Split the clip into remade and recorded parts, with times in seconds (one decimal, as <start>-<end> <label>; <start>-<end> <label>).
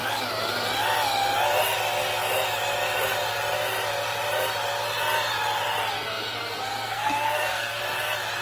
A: 0.0-5.8 recorded; 5.8-7.8 remade; 7.8-8.4 recorded